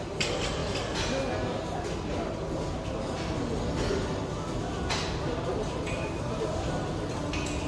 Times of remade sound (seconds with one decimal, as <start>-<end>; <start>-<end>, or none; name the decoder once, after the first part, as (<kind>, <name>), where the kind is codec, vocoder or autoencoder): none